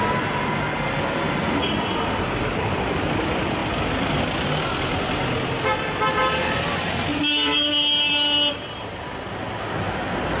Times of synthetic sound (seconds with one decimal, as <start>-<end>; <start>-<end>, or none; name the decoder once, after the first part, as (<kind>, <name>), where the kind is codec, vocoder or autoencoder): none